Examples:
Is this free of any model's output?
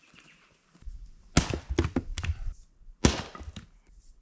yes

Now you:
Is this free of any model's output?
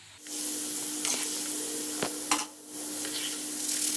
yes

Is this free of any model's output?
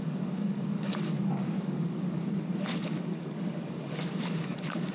no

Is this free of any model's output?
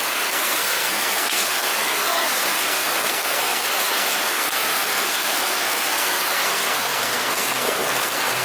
no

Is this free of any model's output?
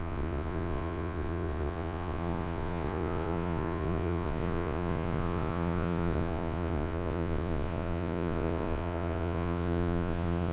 no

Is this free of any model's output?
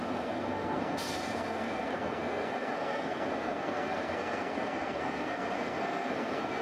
no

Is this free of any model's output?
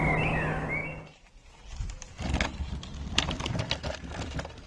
yes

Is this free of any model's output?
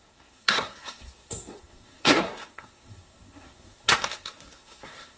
no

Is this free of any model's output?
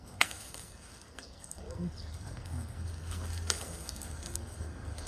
no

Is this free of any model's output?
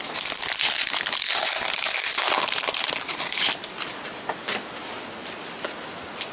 yes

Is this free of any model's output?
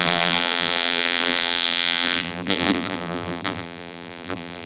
no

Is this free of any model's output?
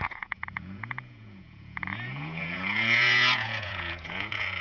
no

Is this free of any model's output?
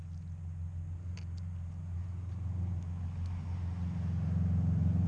yes